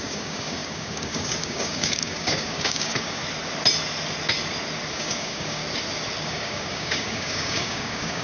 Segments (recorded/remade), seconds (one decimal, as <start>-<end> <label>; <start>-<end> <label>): 0.0-3.2 remade; 3.2-4.9 recorded; 4.9-5.6 remade; 5.6-6.2 recorded; 6.2-8.2 remade

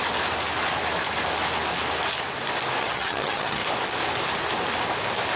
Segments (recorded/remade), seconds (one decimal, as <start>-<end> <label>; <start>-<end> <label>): 0.0-2.8 recorded; 2.8-3.6 remade; 3.6-5.4 recorded

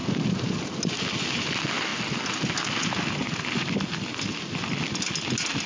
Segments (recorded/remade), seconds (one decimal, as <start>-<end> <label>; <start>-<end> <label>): 0.0-5.7 recorded

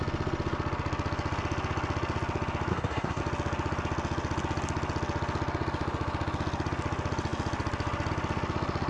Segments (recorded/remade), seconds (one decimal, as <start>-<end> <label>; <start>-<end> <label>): 0.0-2.7 recorded; 2.7-3.2 remade; 3.2-8.9 recorded

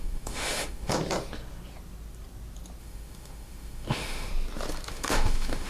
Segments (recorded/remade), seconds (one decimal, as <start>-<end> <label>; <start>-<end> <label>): 0.0-0.9 remade; 0.9-2.8 recorded; 2.8-4.3 remade; 4.3-4.9 recorded; 4.9-5.7 remade